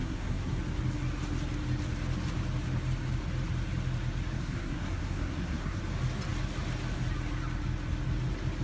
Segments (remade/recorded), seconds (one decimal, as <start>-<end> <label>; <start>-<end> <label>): 0.0-0.6 remade; 0.6-4.4 recorded; 4.4-5.8 remade; 5.8-8.6 recorded